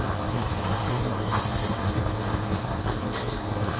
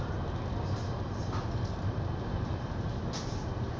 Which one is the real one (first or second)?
second